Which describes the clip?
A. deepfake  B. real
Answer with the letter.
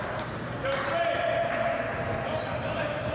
A